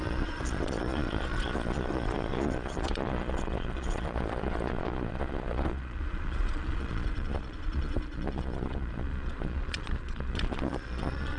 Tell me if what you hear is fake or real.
fake